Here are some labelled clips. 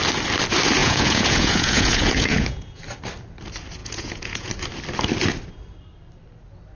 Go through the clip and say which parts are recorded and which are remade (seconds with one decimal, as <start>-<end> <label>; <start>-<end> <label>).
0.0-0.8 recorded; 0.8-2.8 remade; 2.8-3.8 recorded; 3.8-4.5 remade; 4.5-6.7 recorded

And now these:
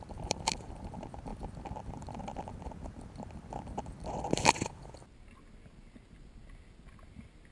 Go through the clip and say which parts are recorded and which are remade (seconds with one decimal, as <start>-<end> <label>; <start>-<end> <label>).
0.0-1.3 remade; 1.3-2.2 recorded; 2.2-6.4 remade; 6.4-7.5 recorded

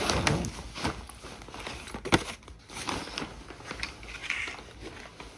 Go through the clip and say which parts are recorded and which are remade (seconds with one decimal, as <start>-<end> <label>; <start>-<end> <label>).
0.0-5.4 recorded